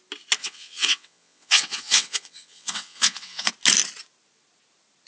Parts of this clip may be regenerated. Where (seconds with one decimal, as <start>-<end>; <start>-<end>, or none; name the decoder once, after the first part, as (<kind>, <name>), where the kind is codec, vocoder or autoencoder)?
0.4-3.5 (vocoder, WaveNeXt)